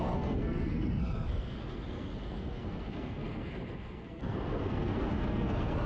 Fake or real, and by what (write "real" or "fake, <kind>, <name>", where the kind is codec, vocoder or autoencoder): fake, codec, SNAC